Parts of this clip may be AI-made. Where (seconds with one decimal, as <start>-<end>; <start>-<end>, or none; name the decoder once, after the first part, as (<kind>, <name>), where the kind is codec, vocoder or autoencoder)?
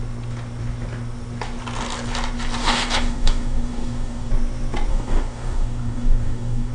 2.6-4.3 (codec, DAC); 4.9-6.7